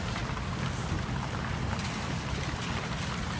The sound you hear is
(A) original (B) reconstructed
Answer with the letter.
A